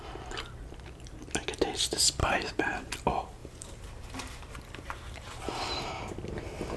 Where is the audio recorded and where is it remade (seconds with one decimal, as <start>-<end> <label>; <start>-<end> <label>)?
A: 0.0-2.2 recorded; 2.2-2.9 remade; 2.9-3.4 recorded; 3.4-5.9 remade; 5.9-6.8 recorded